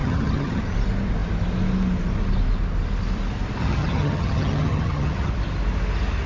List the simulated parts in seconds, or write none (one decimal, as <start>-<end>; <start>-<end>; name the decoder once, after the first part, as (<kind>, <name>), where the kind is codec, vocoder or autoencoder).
0.0-0.6 (vocoder, HiFi-GAN); 3.6-5.3